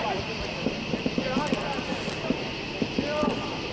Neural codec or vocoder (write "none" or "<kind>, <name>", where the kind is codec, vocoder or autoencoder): vocoder, BigVGAN v2